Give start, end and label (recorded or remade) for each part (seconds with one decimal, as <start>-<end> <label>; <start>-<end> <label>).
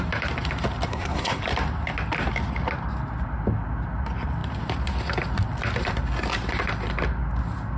0.0-0.9 recorded; 0.9-1.4 remade; 1.4-7.8 recorded